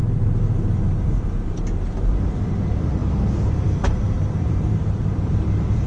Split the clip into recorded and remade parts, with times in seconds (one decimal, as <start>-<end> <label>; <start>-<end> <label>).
0.0-5.9 remade